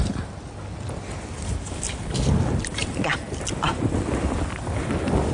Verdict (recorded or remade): recorded